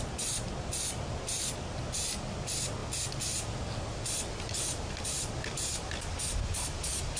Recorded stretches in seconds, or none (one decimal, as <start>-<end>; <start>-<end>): 0.0-7.2